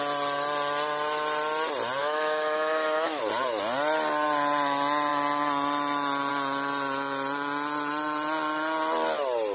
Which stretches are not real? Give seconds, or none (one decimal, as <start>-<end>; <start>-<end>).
2.0-3.2